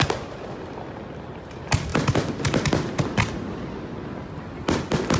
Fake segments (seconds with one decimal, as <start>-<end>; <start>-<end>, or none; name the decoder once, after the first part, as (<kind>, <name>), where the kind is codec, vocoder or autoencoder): none